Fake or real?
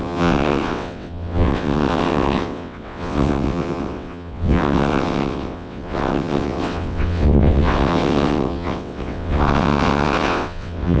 fake